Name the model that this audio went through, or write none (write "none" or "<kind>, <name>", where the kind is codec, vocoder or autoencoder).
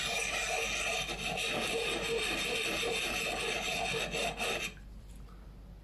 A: none